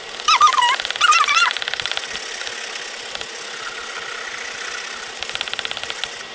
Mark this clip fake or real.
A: real